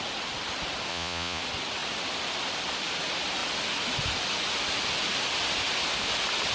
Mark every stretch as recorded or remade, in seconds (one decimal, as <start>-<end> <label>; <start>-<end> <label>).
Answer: 0.0-0.9 recorded; 0.9-1.4 remade; 1.4-6.5 recorded